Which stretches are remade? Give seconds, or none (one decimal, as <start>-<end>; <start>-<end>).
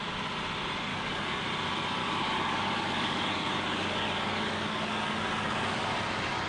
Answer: 0.9-1.4; 2.0-5.9